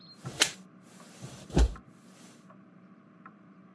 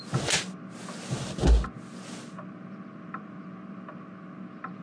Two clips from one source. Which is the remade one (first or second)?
first